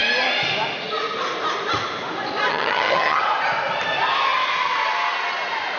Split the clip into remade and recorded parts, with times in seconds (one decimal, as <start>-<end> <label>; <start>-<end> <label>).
0.0-2.5 recorded; 2.5-3.2 remade; 3.2-5.8 recorded